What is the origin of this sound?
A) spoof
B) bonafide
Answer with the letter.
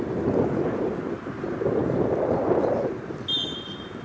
B